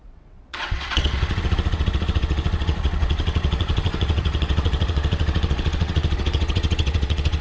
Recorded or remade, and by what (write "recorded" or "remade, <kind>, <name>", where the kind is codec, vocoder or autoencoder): remade, vocoder, WaveNeXt